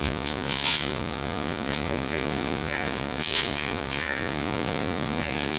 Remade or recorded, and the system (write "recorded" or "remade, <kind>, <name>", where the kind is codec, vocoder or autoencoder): remade, vocoder, Vocos